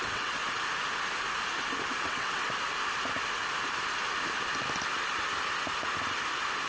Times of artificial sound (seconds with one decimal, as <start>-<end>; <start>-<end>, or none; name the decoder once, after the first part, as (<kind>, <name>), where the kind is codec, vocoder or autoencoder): 0.0-0.4 (vocoder, WaveNeXt); 2.0-2.4